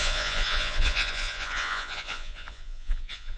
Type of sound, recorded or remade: remade